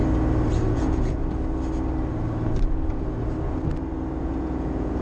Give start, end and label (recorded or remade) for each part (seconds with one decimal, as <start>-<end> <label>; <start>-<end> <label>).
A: 0.0-0.7 recorded; 0.7-1.2 remade; 1.2-4.2 recorded; 4.2-5.0 remade